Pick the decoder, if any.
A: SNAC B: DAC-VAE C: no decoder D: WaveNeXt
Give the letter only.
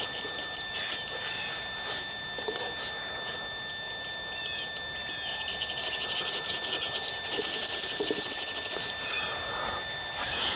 C